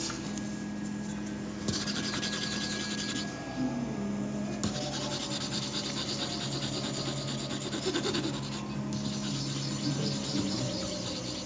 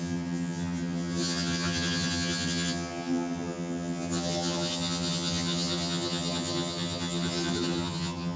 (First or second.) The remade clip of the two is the second